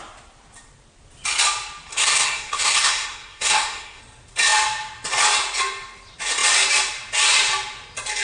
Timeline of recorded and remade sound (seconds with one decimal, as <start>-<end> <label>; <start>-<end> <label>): 0.0-1.9 recorded; 1.9-4.0 remade; 4.0-8.2 recorded